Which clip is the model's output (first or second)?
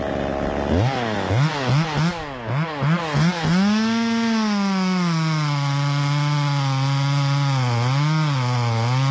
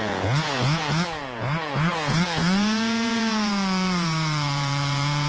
second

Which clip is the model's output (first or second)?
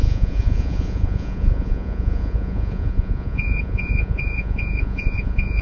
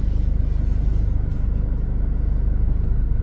first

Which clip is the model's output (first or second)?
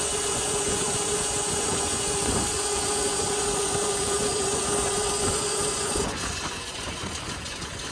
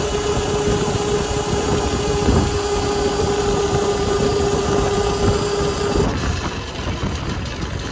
first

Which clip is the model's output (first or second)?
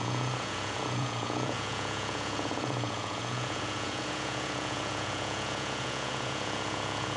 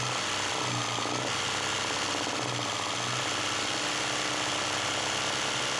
first